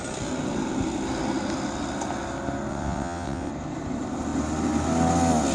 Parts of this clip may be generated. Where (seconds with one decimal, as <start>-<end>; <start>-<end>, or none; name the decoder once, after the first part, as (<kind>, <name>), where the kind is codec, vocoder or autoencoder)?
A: 2.7-3.5 (vocoder, WaveNeXt)